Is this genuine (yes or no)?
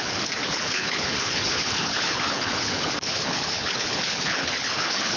no